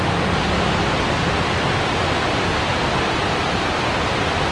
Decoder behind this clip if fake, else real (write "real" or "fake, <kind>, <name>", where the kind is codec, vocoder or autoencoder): real